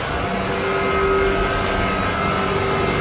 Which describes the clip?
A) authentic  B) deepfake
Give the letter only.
A